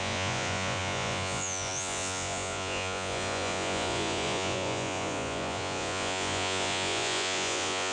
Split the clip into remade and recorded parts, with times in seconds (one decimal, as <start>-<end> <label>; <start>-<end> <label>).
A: 0.0-7.9 remade